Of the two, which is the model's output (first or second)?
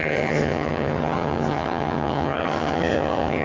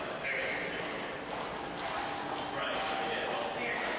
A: first